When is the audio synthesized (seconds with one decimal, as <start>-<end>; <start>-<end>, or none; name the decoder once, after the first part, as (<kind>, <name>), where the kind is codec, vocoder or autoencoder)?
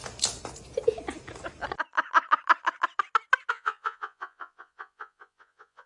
3.5-5.9 (vocoder, Vocos)